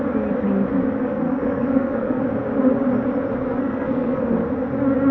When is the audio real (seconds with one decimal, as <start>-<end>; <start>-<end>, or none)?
0.0-0.7; 2.2-3.3; 4.2-5.1